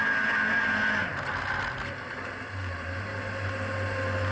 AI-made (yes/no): no